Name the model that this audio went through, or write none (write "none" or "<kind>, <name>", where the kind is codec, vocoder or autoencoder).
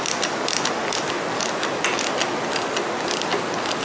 none